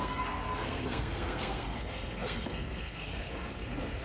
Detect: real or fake fake